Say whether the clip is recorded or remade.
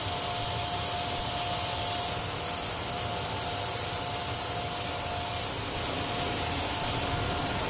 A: recorded